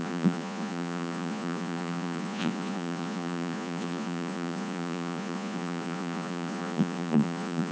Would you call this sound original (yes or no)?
no